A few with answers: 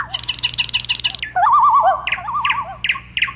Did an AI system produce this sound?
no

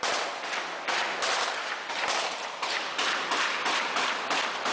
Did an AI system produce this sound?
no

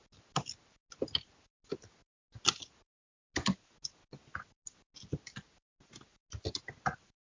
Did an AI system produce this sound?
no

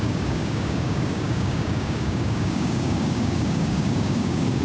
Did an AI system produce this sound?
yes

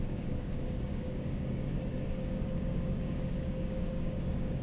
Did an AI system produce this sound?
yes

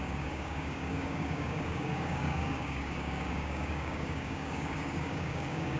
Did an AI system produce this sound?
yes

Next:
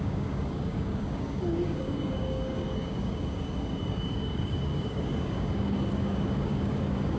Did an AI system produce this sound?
yes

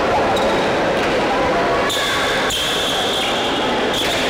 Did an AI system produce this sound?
no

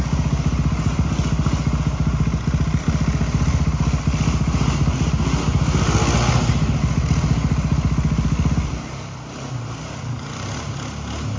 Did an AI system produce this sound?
no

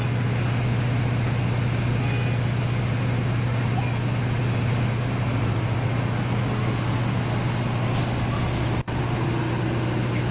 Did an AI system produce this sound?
no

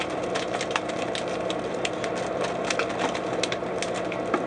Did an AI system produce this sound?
no